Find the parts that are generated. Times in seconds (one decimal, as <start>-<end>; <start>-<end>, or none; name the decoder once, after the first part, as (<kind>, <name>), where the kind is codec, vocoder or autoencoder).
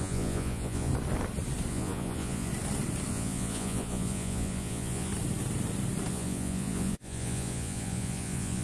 0.0-0.9 (vocoder, Vocos); 1.7-2.5; 3.1-5.1; 6.1-8.6